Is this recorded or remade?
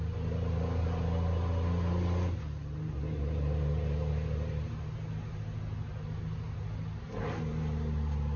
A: recorded